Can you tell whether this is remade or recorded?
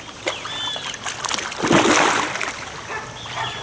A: recorded